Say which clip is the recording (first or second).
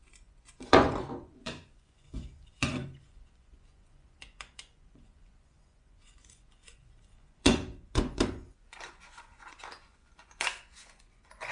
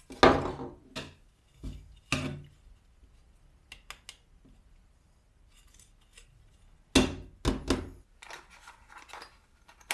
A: second